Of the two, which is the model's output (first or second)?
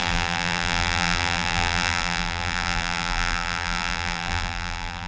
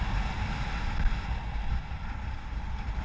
first